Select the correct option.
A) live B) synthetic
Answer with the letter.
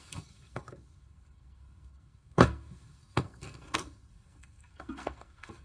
B